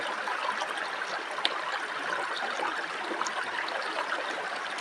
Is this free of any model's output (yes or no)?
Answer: no